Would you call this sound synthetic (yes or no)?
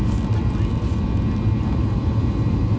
no